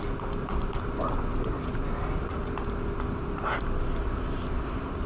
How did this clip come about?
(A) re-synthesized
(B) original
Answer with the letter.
B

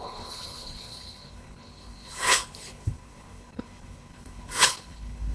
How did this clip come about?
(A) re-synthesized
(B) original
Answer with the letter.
A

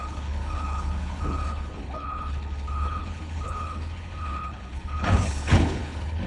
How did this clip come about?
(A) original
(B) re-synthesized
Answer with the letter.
B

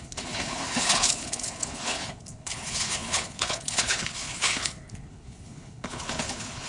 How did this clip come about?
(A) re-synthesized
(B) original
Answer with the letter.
A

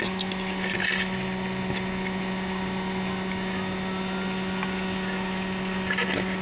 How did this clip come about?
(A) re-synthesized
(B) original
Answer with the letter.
B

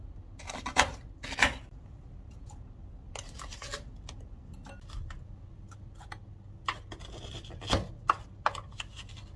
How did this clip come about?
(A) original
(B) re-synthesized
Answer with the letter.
A